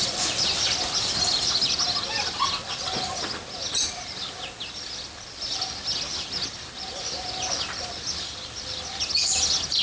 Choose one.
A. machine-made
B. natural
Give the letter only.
B